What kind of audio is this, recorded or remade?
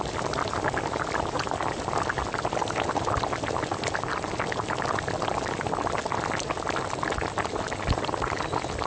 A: recorded